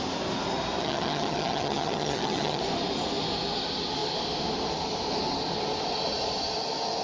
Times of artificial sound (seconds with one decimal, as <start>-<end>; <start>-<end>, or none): 0.8-2.6